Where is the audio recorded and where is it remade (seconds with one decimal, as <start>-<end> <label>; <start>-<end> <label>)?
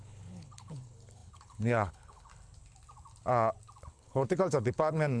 0.0-2.3 remade; 2.3-3.9 recorded; 3.9-5.2 remade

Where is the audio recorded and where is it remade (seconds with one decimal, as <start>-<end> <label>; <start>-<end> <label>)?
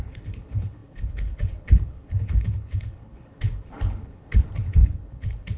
0.0-5.6 remade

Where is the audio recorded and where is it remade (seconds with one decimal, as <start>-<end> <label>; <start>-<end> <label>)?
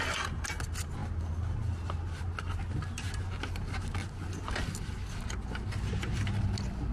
0.0-6.9 recorded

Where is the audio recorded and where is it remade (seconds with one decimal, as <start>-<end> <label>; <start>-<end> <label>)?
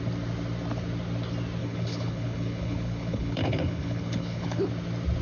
0.0-1.6 recorded; 1.6-4.7 remade; 4.7-5.2 recorded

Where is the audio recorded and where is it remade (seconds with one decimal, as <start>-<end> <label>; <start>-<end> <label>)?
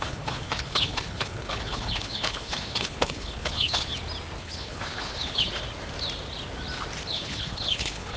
0.0-3.9 remade; 3.9-4.4 recorded; 4.4-5.5 remade; 5.5-7.1 recorded; 7.1-8.2 remade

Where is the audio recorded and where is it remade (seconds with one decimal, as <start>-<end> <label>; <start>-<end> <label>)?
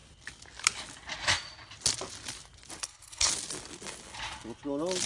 0.0-2.8 recorded; 2.8-3.3 remade; 3.3-5.1 recorded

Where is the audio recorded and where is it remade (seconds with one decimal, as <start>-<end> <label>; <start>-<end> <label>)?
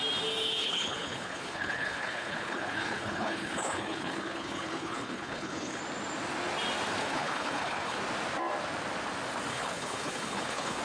0.0-0.6 recorded; 0.6-5.8 remade; 5.8-7.0 recorded; 7.0-8.0 remade; 8.0-9.5 recorded; 9.5-10.8 remade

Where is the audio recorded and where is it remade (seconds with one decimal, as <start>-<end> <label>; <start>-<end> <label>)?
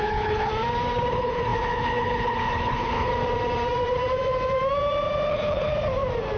0.0-0.5 remade; 0.5-1.1 recorded; 1.1-3.1 remade; 3.1-5.3 recorded; 5.3-5.7 remade; 5.7-6.4 recorded